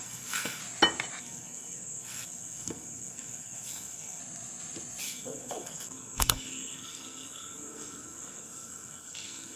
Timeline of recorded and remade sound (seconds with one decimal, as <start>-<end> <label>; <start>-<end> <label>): 0.0-0.6 remade; 0.6-1.2 recorded; 1.2-4.2 remade; 4.2-5.0 recorded; 5.0-9.6 remade